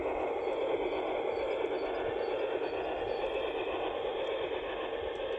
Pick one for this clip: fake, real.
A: real